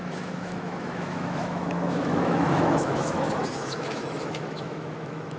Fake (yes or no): yes